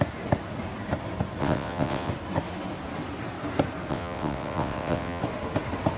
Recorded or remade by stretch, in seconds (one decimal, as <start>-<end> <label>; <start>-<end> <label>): 0.0-1.4 recorded; 1.4-2.1 remade; 2.1-3.9 recorded; 3.9-5.2 remade; 5.2-6.0 recorded